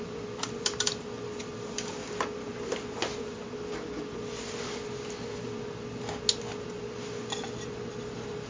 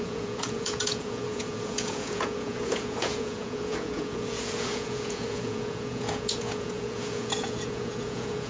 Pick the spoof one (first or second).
second